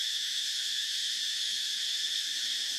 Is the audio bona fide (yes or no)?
no